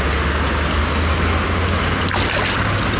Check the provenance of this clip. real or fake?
real